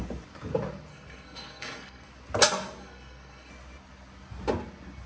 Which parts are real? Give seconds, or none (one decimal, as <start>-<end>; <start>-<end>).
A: 0.0-0.9; 2.1-2.8; 3.5-5.1

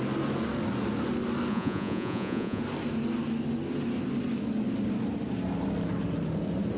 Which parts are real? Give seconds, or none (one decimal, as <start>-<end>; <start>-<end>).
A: 0.0-1.5; 2.6-6.8

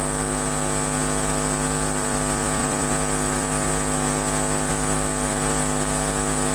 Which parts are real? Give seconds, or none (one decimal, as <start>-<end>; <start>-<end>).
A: 0.0-1.0

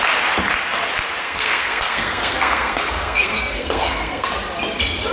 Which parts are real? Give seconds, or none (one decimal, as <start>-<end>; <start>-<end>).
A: 0.0-1.2; 4.3-5.1

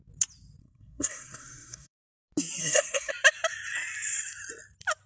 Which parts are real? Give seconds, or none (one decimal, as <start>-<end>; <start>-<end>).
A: 0.0-0.6; 2.0-2.6; 3.1-5.1

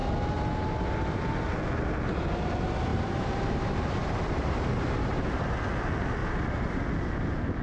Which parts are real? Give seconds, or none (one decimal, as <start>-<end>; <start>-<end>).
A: 0.0-2.9; 5.5-6.2; 6.8-7.6

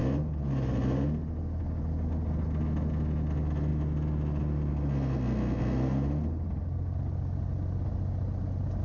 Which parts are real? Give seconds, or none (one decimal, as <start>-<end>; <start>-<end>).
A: 0.0-8.8